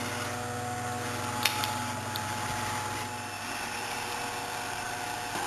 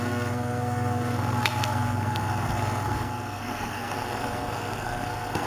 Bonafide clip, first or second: first